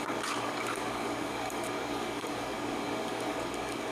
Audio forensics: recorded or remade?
remade